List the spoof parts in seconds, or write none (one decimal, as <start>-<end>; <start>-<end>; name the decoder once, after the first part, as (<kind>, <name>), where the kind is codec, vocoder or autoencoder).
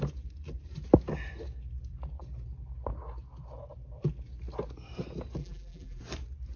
5.4-6.0 (vocoder, BigVGAN v2)